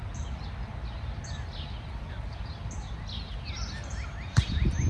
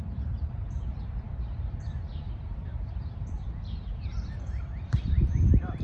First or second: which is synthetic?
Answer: second